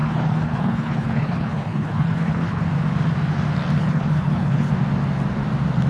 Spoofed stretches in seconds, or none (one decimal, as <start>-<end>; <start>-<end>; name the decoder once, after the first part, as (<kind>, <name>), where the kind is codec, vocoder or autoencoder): 0.0-2.6 (codec, HILCodec); 3.8-4.7